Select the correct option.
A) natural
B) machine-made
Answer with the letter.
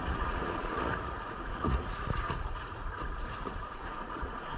B